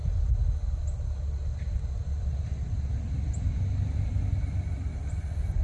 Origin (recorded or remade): recorded